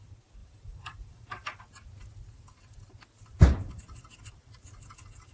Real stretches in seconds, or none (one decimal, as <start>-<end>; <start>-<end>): 0.0-0.4; 1.6-5.3